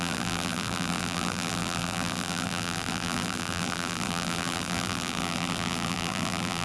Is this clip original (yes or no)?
no